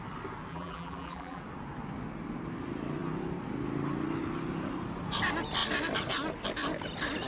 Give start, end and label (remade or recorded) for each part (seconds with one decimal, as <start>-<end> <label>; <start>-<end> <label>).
0.0-0.5 recorded; 0.5-1.4 remade; 1.4-7.3 recorded

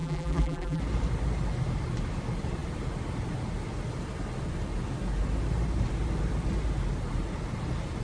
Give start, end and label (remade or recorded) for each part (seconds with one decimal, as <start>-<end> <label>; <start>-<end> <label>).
0.0-0.8 remade; 0.8-8.0 recorded

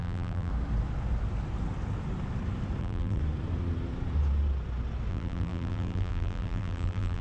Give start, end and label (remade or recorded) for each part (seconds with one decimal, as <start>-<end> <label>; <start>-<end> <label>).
0.0-0.5 remade; 0.5-2.8 recorded; 2.8-3.2 remade; 3.2-5.1 recorded; 5.1-7.2 remade

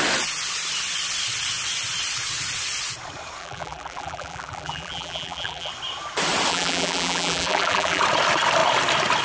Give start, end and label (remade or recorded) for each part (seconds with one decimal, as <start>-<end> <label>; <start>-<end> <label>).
0.0-3.4 recorded; 3.4-5.7 remade; 5.7-6.5 recorded; 6.5-8.0 remade; 8.0-9.2 recorded

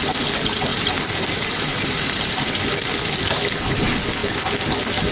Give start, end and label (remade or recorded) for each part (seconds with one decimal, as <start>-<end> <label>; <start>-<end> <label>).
0.0-0.7 recorded; 0.7-2.5 remade; 2.5-5.1 recorded

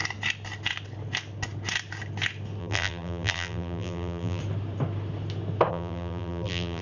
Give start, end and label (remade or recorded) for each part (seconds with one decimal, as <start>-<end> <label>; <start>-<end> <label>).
0.0-2.6 recorded; 2.6-4.4 remade; 4.4-5.7 recorded; 5.7-6.8 remade

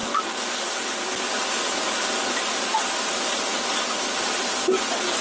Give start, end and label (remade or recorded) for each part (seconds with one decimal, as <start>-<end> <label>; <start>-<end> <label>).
0.0-5.2 recorded

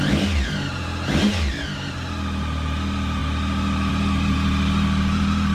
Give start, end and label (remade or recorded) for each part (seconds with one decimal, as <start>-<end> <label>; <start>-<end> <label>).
0.0-5.5 recorded